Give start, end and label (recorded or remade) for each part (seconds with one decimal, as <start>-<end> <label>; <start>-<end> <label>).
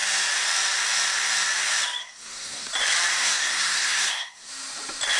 0.0-2.0 recorded; 2.0-2.7 remade; 2.7-3.2 recorded; 3.2-4.5 remade; 4.5-5.2 recorded